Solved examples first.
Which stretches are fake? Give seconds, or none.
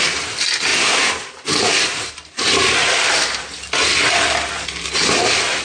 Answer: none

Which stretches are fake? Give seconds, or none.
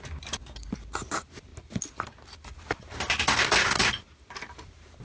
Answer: 0.0-1.5 (vocoder, BigVGAN v2); 4.5-5.0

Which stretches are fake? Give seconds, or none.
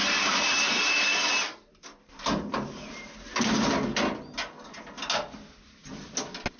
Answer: 0.0-4.0 (vocoder, BigVGAN v2)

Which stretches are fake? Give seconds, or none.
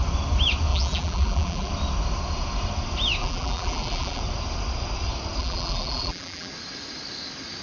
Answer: 0.7-1.7 (vocoder, BigVGAN v2); 3.2-4.2; 5.4-6.5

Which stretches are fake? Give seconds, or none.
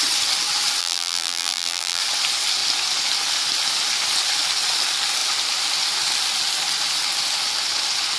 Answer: 0.8-2.0 (vocoder, BigVGAN v2)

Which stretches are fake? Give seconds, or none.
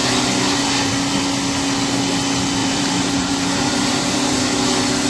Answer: 2.6-4.4 (vocoder, BigVGAN v2)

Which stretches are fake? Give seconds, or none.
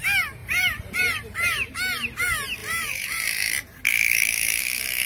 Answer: 0.4-1.7 (vocoder, BigVGAN v2); 2.6-3.5